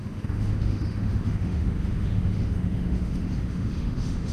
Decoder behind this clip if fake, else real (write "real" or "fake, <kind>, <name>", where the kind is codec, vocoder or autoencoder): fake, autoencoder, DAC-VAE